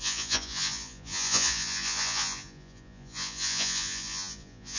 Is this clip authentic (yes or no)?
no